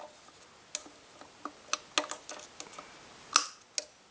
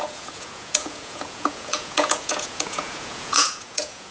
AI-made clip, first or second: second